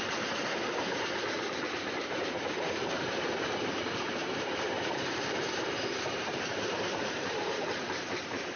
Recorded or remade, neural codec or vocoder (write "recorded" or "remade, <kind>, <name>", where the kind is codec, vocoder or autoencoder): remade, vocoder, BigVGAN v2